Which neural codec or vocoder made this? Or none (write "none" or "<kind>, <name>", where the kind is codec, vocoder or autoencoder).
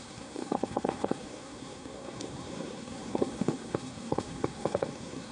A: codec, SNAC